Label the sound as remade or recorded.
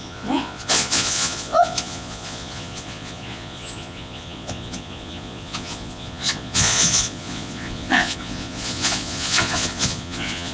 remade